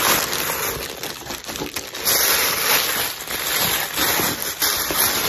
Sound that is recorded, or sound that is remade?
recorded